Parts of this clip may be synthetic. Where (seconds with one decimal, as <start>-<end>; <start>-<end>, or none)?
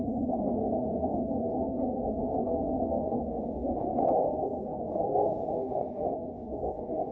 0.0-7.1